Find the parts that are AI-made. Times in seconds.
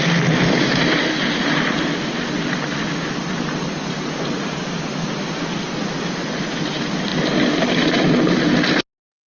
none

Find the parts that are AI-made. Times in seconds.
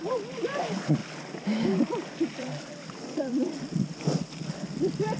0.0-1.0; 2.3-5.2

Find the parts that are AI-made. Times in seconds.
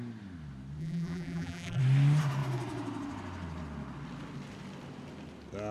0.8-1.8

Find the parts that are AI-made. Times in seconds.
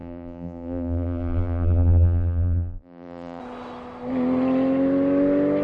0.0-3.4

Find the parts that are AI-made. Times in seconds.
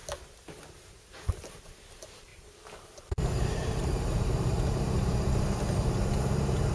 0.9-6.7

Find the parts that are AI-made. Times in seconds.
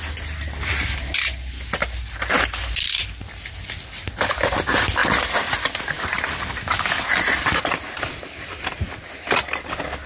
none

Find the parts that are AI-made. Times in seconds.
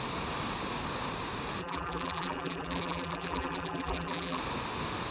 1.6-4.4